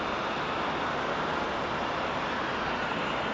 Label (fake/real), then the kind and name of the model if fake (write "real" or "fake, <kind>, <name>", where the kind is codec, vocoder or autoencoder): real